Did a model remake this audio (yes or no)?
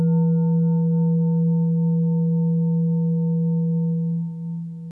no